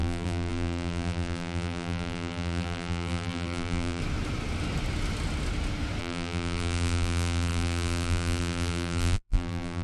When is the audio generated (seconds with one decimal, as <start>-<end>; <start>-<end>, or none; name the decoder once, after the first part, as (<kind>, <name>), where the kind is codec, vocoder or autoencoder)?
0.0-4.0 (vocoder, BigVGAN v2); 6.0-9.8